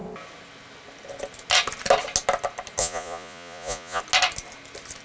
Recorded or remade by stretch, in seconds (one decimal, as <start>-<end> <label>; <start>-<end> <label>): 0.0-2.8 recorded; 2.8-4.0 remade; 4.0-5.0 recorded

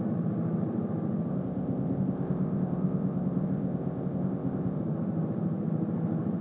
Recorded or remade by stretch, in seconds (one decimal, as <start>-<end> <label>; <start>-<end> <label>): 0.0-1.3 recorded; 1.3-4.8 remade; 4.8-6.4 recorded

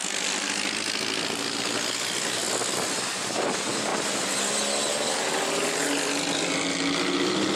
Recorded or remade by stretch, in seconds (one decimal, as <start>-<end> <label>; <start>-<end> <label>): 0.0-0.5 remade; 0.5-7.6 recorded

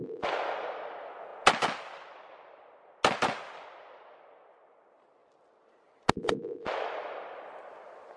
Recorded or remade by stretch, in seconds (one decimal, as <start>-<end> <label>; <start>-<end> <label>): 0.0-8.2 recorded

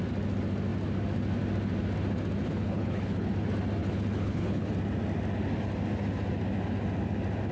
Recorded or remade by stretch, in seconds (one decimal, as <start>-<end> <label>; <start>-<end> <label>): 0.0-2.4 recorded; 2.4-3.3 remade; 3.3-3.8 recorded; 3.8-4.7 remade; 4.7-7.5 recorded

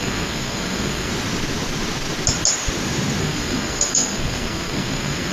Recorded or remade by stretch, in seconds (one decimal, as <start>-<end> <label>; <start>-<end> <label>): 0.0-1.1 remade; 1.1-3.2 recorded; 3.2-5.3 remade